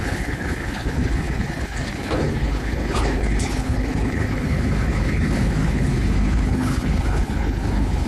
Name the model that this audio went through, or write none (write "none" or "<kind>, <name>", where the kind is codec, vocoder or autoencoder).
codec, HILCodec